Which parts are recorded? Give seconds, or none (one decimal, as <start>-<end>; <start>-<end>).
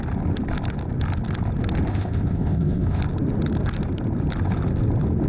0.0-1.9; 3.0-5.3